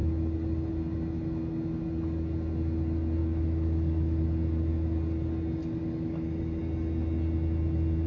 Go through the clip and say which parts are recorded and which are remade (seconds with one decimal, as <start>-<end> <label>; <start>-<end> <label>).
0.0-3.2 recorded; 3.2-4.2 remade; 4.2-5.6 recorded; 5.6-6.6 remade; 6.6-8.1 recorded